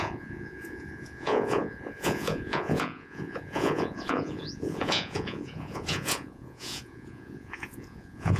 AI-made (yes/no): yes